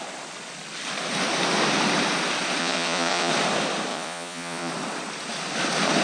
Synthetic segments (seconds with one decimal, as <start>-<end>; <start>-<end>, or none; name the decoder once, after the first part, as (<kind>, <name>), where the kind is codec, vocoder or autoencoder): 2.6-3.3 (vocoder, Vocos); 3.9-4.7